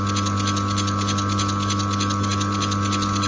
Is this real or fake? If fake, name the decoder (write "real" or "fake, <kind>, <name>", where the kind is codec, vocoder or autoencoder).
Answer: real